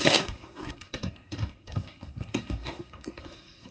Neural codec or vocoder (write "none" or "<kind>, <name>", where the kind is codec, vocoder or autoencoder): codec, SNAC